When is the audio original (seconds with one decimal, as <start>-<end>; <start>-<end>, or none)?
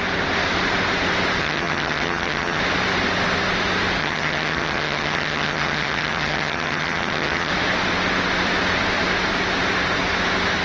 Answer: 0.0-1.4; 2.6-4.0; 7.5-10.6